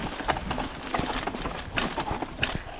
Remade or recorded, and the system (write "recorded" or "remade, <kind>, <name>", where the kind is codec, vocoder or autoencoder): recorded